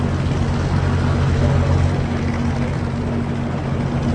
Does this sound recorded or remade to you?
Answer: recorded